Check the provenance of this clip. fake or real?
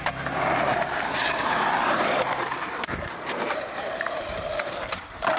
fake